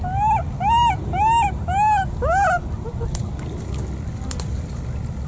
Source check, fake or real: real